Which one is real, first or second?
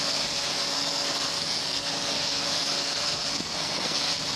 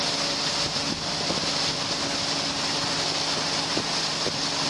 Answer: second